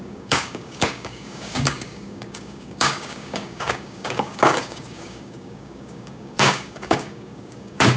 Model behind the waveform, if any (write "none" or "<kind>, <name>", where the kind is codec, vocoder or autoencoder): codec, DAC